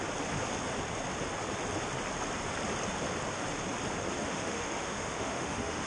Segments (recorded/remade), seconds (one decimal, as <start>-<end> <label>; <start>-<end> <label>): 0.0-4.2 recorded; 4.2-5.9 remade